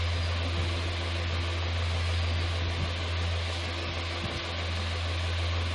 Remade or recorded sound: recorded